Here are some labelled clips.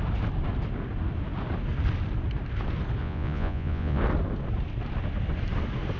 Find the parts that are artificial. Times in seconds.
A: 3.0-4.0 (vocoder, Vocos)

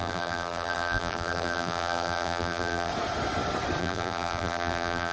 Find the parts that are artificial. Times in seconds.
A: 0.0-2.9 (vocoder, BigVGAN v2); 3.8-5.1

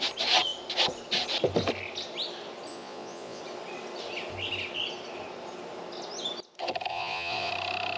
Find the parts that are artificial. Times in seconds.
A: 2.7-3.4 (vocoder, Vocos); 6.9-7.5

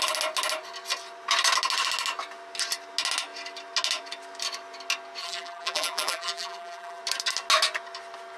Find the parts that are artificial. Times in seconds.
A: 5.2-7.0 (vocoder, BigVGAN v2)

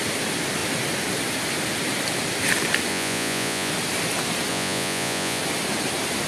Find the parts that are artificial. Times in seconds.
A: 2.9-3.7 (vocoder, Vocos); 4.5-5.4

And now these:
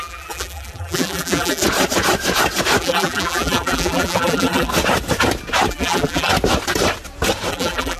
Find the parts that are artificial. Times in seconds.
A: 0.0-1.6 (vocoder, BigVGAN v2); 2.8-4.7; 5.7-6.3; 7.5-8.0

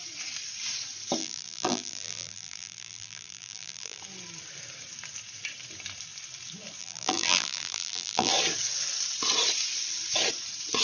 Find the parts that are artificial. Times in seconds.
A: 1.2-4.0 (vocoder, BigVGAN v2); 6.8-8.3

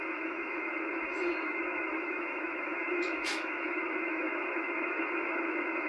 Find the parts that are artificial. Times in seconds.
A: 0.0-5.9 (autoencoder, DAC-VAE)